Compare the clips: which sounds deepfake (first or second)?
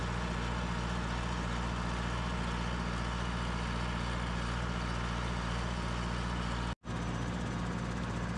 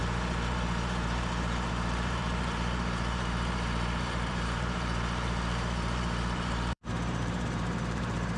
second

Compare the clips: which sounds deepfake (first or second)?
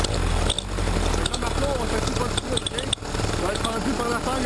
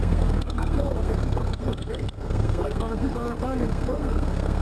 second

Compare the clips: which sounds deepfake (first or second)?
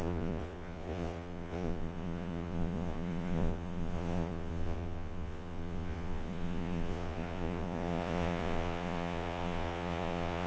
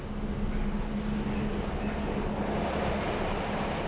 first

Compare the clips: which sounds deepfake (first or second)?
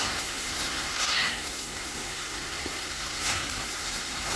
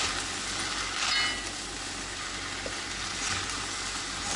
first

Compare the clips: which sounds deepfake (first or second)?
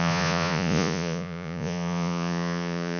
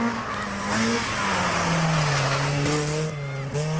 first